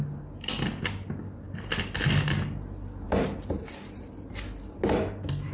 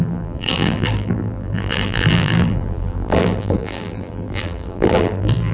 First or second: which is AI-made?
second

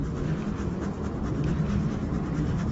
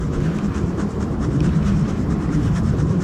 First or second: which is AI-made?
second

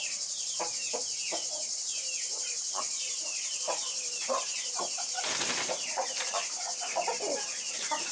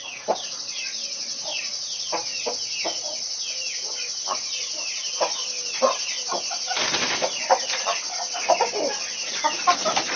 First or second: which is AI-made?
first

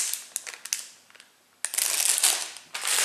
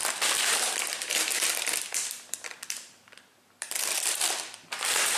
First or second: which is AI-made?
second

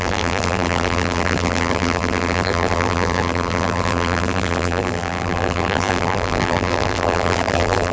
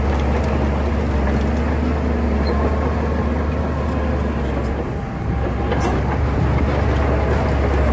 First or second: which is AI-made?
first